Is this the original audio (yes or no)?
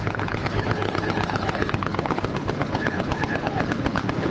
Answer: no